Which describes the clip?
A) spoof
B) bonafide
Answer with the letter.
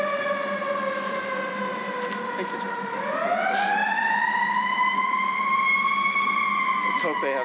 B